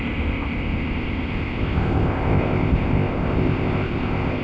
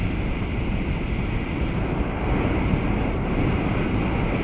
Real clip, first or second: second